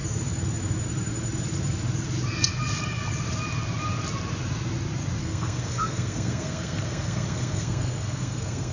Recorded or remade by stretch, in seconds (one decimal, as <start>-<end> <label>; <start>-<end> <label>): 0.0-5.2 recorded; 5.2-8.7 remade